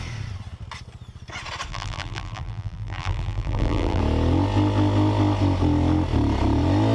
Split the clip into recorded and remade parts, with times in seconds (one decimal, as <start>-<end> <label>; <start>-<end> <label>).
0.0-1.7 recorded; 1.7-4.0 remade; 4.0-6.9 recorded

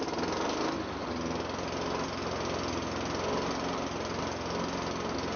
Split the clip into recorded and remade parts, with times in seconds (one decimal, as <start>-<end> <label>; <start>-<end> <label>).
0.0-5.4 recorded

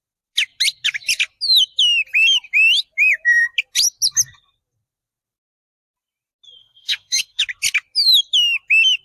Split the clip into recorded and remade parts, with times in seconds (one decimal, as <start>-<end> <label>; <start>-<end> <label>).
0.0-6.6 recorded; 6.6-7.4 remade; 7.4-9.0 recorded